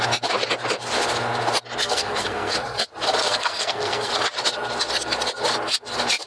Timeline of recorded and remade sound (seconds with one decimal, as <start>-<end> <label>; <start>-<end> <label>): 0.0-1.8 recorded; 1.8-2.6 remade; 2.6-3.2 recorded; 3.2-4.1 remade; 4.1-6.3 recorded